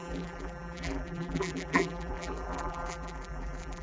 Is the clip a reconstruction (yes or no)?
yes